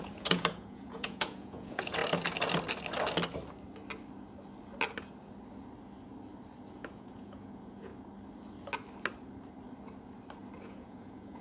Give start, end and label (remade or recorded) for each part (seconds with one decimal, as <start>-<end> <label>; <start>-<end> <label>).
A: 0.0-2.0 remade; 2.0-6.7 recorded; 6.7-7.9 remade; 7.9-10.6 recorded; 10.6-11.4 remade